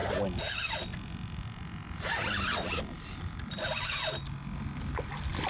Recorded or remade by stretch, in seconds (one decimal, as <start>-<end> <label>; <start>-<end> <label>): 0.0-5.5 recorded